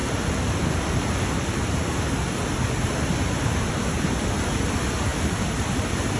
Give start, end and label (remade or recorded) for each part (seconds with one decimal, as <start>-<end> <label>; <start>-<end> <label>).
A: 0.0-6.2 recorded